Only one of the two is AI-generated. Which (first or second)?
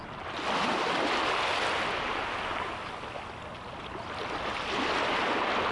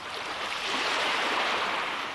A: second